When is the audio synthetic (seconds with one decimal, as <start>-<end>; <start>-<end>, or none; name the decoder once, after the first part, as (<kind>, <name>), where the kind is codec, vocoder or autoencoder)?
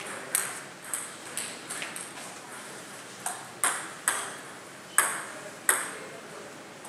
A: 2.5-3.0 (vocoder, BigVGAN v2)